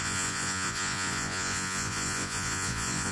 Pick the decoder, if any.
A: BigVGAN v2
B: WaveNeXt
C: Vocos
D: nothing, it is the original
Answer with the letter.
C